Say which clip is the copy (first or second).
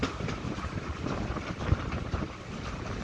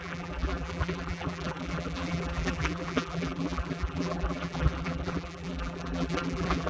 second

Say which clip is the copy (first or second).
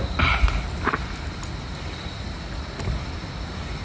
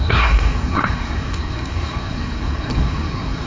second